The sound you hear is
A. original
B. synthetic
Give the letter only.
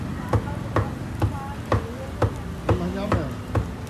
A